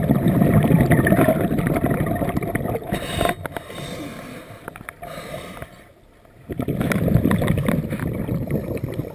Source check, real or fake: fake